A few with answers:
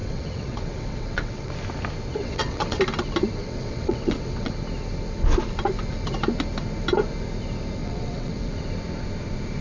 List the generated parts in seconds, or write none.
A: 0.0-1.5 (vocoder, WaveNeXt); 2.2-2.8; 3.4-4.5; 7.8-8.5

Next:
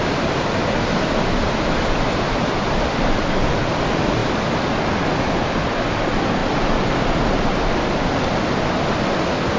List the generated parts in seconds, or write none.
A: none

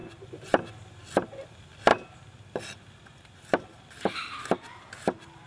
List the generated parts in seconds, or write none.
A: none

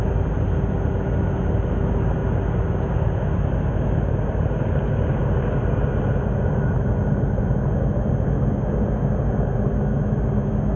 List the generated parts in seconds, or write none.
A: none

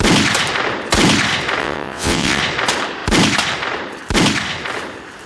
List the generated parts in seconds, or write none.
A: 1.6-2.4 (vocoder, WaveNeXt)

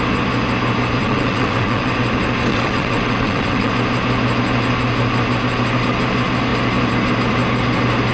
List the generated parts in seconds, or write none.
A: 1.0-1.9 (vocoder, WaveNeXt); 2.5-3.7

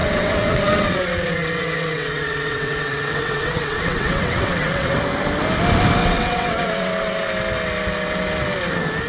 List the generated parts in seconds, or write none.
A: 0.0-5.0 (vocoder, WaveNeXt); 6.0-7.3

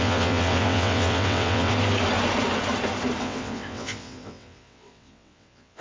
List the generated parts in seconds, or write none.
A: 0.0-1.7 (vocoder, WaveNeXt); 3.2-5.8